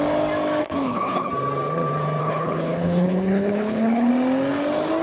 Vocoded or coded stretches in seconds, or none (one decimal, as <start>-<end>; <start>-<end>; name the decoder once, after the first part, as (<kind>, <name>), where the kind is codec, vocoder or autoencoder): 0.6-1.3 (codec, HILCodec); 2.2-4.1